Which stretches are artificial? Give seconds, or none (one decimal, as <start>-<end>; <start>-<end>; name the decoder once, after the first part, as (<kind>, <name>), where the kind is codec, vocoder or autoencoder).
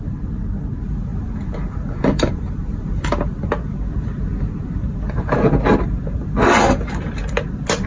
none